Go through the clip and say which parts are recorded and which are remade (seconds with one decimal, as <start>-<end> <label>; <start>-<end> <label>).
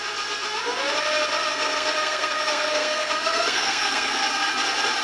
0.0-1.5 recorded; 1.5-4.5 remade; 4.5-5.0 recorded